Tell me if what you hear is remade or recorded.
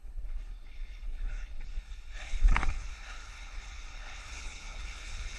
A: remade